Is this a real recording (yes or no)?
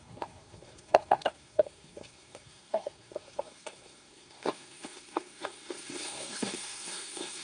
no